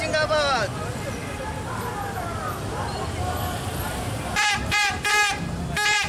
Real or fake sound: real